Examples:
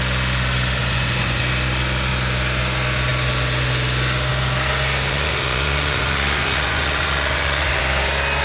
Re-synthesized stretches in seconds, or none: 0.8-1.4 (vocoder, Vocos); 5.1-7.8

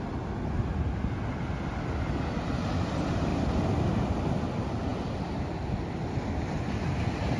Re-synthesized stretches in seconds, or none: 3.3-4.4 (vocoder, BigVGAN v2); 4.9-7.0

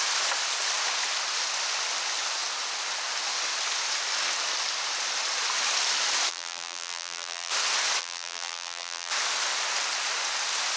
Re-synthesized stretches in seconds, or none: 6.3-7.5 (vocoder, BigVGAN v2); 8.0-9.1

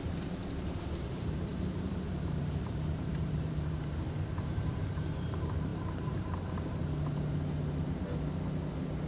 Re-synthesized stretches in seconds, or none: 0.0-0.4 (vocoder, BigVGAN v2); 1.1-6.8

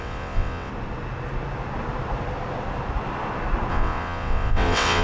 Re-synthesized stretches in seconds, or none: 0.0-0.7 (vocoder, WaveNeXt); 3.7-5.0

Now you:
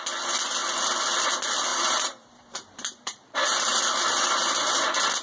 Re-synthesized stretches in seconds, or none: 1.7-3.8 (vocoder, BigVGAN v2)

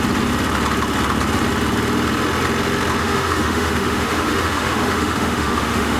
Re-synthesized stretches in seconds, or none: 3.0-6.0 (autoencoder, DAC-VAE)

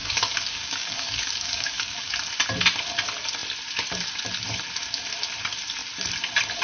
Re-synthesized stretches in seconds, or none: 0.0-2.1 (codec, DAC)